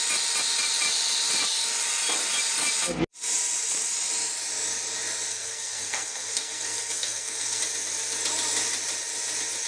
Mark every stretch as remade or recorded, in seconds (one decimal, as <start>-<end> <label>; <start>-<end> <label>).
0.0-5.3 recorded; 5.3-7.6 remade; 7.6-9.7 recorded